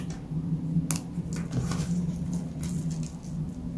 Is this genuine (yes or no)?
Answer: yes